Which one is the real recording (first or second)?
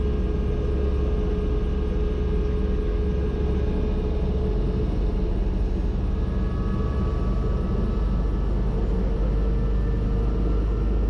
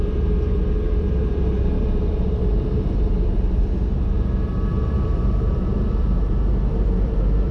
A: first